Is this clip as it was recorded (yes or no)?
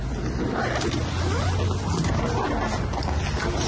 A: yes